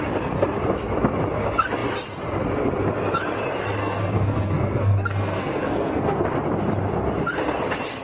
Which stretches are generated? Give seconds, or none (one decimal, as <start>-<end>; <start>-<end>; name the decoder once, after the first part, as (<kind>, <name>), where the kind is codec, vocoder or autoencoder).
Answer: 3.8-6.2 (codec, SNAC)